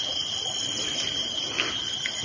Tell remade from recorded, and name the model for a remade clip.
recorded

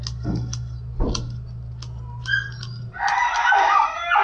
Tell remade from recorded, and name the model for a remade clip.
recorded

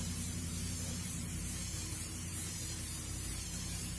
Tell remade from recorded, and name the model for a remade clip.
remade, vocoder, BigVGAN v2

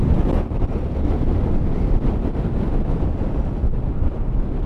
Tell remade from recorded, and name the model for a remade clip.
remade, vocoder, BigVGAN v2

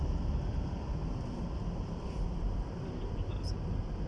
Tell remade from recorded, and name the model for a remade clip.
recorded